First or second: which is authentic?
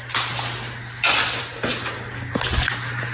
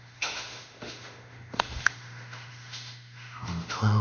first